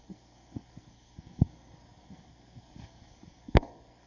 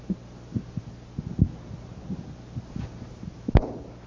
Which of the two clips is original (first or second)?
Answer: second